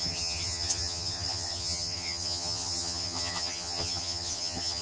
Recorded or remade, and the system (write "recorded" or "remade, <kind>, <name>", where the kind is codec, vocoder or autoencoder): remade, vocoder, HiFi-GAN